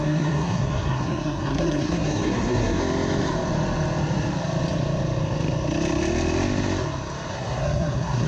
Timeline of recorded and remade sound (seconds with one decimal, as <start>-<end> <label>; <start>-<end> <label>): 0.0-2.8 remade; 2.8-7.3 recorded; 7.3-8.3 remade